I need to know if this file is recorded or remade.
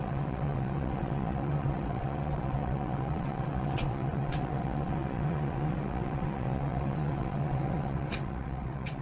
remade